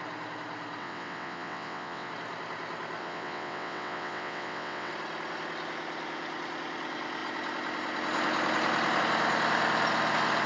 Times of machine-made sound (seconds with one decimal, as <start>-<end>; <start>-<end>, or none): 0.8-2.1; 3.0-4.9

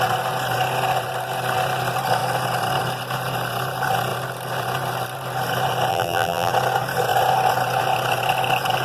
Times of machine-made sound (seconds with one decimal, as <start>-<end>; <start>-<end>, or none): 5.9-6.5

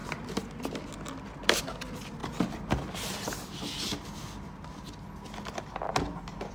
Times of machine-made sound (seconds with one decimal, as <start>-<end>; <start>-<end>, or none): none

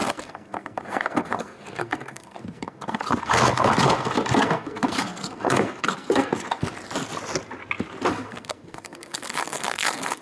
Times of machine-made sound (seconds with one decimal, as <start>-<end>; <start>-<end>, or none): 0.0-6.7; 8.1-10.2

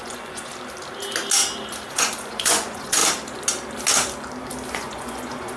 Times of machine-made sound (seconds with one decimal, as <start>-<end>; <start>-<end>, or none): 0.0-0.5; 1.9-3.0; 4.7-5.6

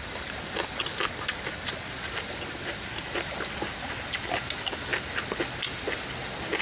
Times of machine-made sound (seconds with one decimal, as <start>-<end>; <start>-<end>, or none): none